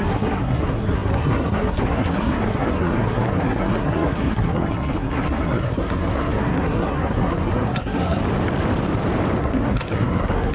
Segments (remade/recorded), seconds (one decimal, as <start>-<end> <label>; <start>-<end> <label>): 0.0-8.2 remade; 8.2-9.4 recorded; 9.4-10.5 remade